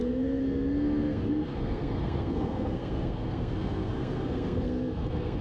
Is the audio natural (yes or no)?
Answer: no